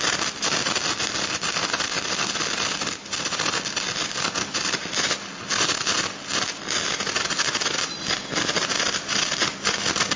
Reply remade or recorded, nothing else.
recorded